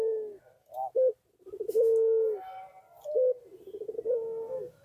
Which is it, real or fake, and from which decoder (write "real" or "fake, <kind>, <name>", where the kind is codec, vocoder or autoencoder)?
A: real